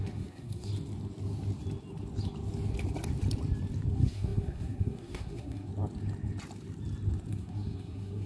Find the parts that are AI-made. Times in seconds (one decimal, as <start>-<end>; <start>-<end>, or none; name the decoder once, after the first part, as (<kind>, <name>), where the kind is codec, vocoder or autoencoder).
0.0-0.7 (codec, SNAC); 3.9-5.7; 7.3-8.3